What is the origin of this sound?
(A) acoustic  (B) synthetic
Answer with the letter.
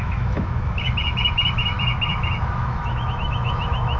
B